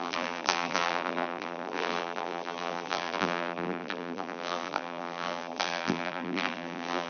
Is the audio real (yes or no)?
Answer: no